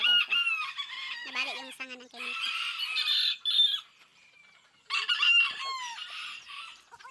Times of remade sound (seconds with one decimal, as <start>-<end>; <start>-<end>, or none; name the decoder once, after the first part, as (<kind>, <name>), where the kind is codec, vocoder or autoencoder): 4.1-5.1 (vocoder, BigVGAN v2)